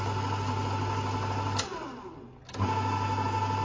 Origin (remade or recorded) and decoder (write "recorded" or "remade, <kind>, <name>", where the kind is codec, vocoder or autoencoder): recorded